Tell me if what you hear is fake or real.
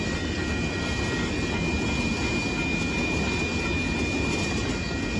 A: real